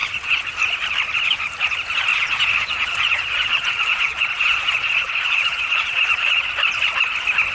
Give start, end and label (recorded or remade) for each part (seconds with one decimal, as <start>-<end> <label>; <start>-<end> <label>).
0.0-0.5 remade; 0.5-2.1 recorded; 2.1-6.5 remade; 6.5-7.5 recorded

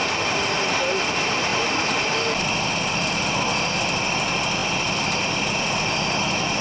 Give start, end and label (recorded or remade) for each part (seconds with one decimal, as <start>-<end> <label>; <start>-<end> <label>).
0.0-6.6 recorded

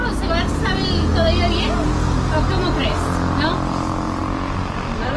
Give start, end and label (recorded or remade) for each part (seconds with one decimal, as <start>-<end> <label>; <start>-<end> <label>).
0.0-4.2 recorded; 4.2-5.2 remade

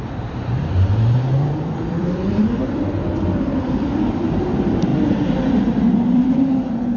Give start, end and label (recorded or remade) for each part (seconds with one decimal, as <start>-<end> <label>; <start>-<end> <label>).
0.0-4.9 remade; 4.9-5.6 recorded; 5.6-7.0 remade